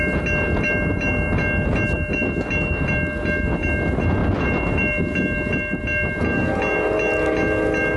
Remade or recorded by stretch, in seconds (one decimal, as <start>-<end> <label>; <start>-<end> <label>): 0.0-8.0 recorded